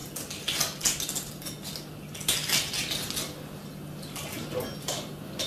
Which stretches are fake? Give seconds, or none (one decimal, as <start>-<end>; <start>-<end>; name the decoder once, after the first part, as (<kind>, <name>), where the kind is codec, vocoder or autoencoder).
none

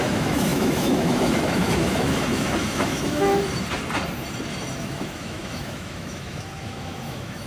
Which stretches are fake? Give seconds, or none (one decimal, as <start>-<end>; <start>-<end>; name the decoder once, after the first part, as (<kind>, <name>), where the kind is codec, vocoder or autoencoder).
0.0-3.3 (autoencoder, DAC-VAE); 4.8-7.5

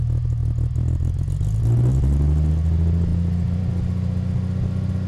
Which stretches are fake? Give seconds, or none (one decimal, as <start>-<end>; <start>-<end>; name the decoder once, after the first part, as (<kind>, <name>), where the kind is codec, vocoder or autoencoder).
none

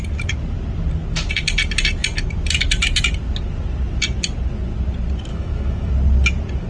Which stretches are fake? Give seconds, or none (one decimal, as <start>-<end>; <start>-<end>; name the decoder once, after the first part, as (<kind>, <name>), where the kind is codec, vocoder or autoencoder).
5.3-5.9 (autoencoder, DAC-VAE)

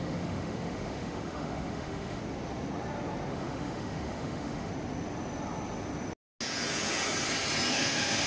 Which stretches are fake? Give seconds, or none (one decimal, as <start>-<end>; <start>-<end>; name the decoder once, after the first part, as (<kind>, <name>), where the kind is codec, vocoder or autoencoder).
0.0-2.2 (autoencoder, DAC-VAE); 3.3-4.7; 7.7-8.3